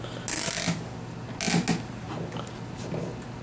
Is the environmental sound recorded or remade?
recorded